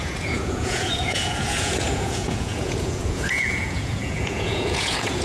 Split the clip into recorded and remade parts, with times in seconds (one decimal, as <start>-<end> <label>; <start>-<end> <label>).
0.0-5.2 remade